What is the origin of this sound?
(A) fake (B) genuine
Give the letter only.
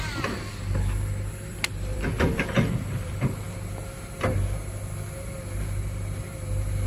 A